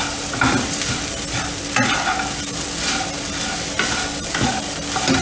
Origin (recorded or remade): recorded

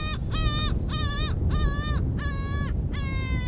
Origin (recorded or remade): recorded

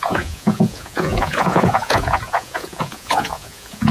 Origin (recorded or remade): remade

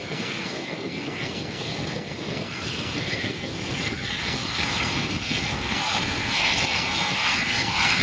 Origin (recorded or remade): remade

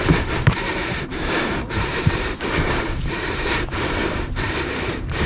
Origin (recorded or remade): remade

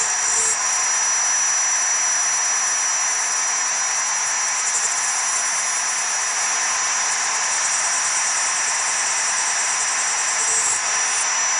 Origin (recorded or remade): recorded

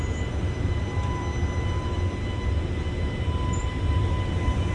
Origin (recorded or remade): remade